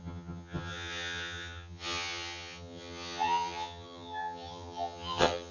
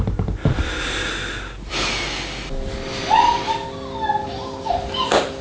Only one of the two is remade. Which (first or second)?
first